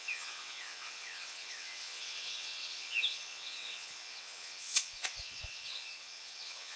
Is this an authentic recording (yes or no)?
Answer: no